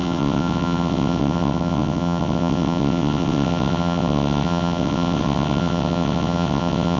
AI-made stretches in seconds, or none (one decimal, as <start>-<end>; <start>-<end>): 0.0-7.0